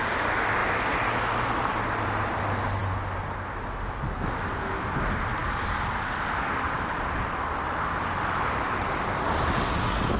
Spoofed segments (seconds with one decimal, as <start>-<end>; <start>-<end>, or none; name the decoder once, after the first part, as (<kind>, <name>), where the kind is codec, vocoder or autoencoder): none